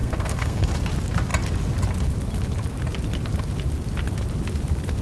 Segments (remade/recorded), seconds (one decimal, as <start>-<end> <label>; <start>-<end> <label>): 0.0-0.7 remade; 0.7-5.0 recorded